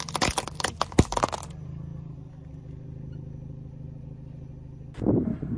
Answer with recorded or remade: recorded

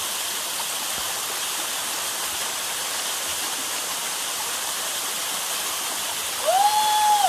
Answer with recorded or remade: recorded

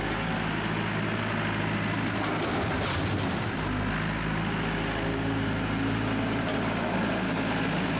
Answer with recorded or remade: recorded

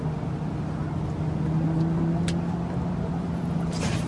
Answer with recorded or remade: recorded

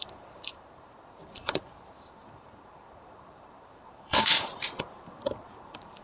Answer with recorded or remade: remade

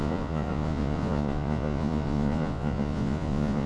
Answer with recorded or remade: remade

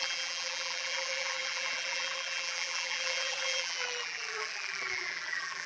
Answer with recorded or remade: remade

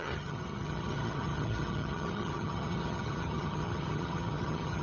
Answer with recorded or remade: remade